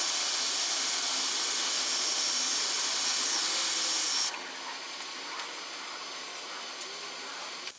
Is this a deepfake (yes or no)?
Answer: no